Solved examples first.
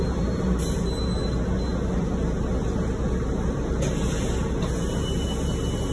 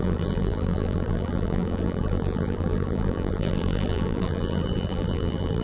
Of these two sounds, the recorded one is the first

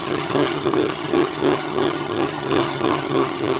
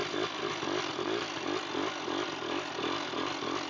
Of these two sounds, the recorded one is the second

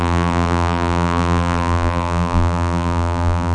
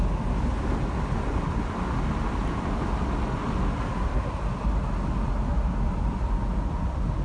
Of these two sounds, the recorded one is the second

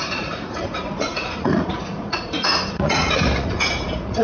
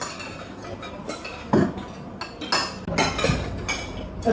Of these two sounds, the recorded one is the second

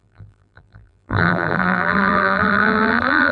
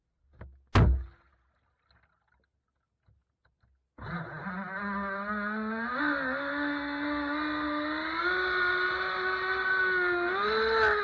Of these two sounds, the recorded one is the second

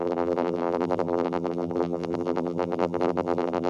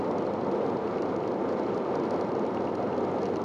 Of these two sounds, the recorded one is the second